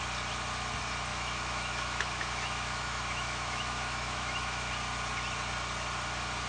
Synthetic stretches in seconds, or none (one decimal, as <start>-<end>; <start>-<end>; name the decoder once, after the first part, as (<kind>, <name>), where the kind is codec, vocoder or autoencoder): 1.1-4.7 (autoencoder, DAC-VAE)